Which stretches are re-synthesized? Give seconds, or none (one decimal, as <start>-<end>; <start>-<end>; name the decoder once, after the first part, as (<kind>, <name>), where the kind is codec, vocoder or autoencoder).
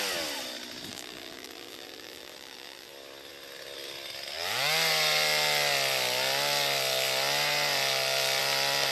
0.9-2.9 (vocoder, BigVGAN v2)